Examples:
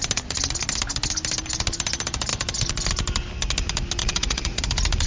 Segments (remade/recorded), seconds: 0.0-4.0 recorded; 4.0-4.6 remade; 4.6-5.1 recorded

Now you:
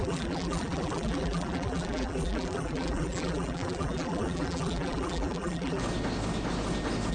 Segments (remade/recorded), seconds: 0.0-5.8 remade; 5.8-7.1 recorded

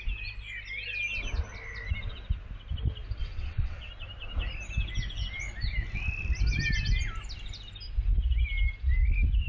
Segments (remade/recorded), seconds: 0.0-3.2 recorded; 3.2-3.9 remade; 3.9-9.5 recorded

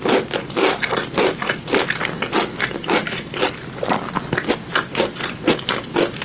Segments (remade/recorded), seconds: 0.0-6.2 recorded

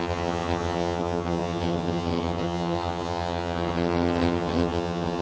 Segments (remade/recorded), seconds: 0.0-5.2 remade